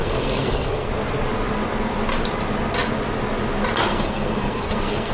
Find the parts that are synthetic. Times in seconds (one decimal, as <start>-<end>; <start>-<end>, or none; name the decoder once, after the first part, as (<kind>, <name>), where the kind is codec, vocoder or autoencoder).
0.0-0.9 (codec, SNAC); 3.9-5.1